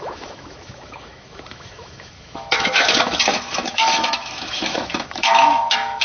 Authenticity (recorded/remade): remade